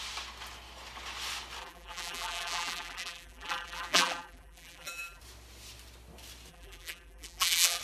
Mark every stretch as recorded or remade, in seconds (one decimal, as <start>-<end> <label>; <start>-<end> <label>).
0.0-1.6 recorded; 1.6-5.2 remade; 5.2-6.5 recorded; 6.5-7.8 remade